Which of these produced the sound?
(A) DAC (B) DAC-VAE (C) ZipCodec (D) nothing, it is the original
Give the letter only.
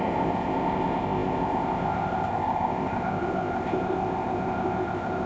C